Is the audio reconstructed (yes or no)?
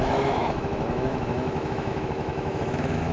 yes